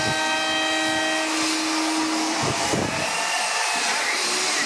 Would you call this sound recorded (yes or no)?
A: yes